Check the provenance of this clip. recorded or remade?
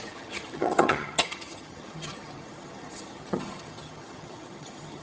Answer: remade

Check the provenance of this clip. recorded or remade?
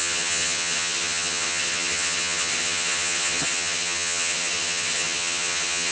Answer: remade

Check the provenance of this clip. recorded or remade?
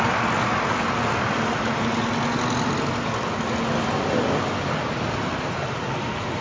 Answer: recorded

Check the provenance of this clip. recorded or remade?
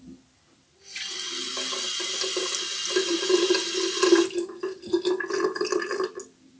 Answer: recorded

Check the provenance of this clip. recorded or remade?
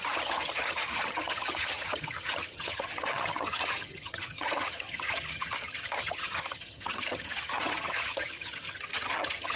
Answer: remade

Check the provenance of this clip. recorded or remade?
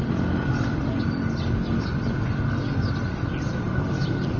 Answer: recorded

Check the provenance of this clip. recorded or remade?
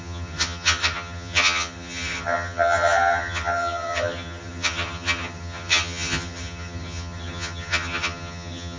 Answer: remade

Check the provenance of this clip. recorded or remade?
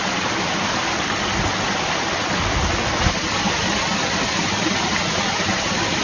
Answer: recorded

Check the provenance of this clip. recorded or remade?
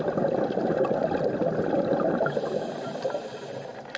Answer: recorded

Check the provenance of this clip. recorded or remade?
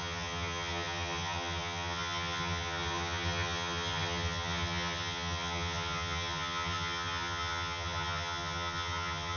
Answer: remade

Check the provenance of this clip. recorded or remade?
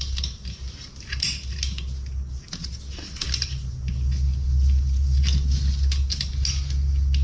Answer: recorded